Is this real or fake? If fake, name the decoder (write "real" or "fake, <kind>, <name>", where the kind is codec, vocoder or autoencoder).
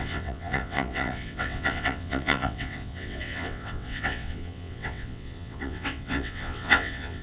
fake, vocoder, WaveNeXt